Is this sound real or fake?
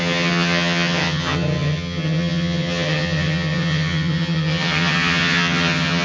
fake